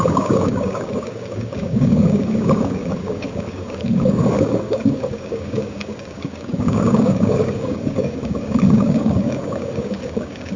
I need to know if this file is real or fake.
fake